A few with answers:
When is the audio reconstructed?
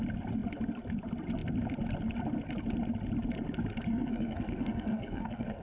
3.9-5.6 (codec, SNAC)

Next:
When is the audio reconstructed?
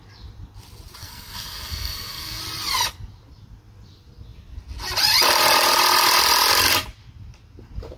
1.0-2.4 (codec, SNAC)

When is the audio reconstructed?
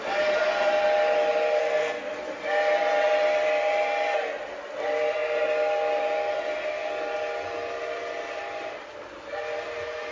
1.6-2.1 (codec, SNAC)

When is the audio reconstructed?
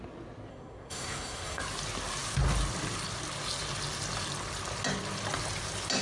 0.5-1.6 (codec, SNAC)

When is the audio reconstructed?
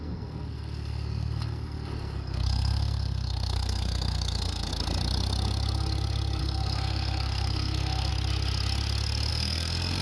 0.0-4.7 (codec, SNAC); 6.4-8.1; 9.3-10.0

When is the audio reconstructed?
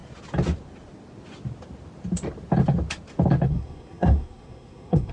3.5-5.1 (codec, SNAC)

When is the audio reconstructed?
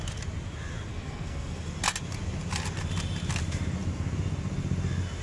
0.9-1.6 (codec, SNAC)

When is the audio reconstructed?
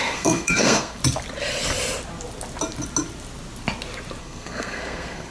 0.0-1.0 (codec, SNAC); 4.2-5.3